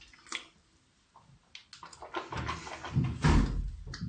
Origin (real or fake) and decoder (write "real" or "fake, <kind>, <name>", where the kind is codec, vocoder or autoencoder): real